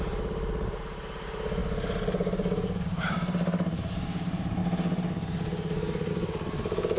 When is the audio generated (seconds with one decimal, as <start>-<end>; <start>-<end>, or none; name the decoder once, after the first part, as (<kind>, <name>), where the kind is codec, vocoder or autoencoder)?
0.0-4.6 (vocoder, BigVGAN v2); 6.1-7.0